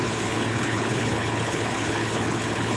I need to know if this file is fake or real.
fake